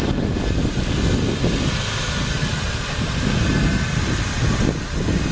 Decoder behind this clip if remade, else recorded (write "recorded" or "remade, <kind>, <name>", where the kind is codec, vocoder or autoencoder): recorded